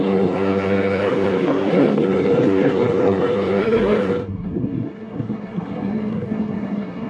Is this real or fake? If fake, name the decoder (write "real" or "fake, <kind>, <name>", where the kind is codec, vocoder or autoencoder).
fake, codec, SNAC